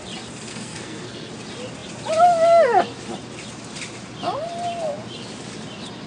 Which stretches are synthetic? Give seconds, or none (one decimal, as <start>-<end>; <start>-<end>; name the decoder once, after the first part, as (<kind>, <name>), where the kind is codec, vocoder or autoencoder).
0.5-1.3 (codec, SNAC)